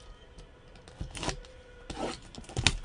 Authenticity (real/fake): real